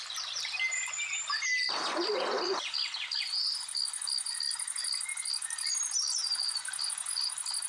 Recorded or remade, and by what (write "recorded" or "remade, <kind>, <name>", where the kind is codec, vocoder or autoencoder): recorded